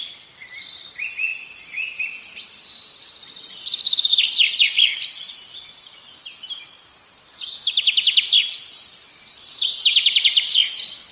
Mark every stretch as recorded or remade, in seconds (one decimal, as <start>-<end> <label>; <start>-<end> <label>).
0.0-11.1 recorded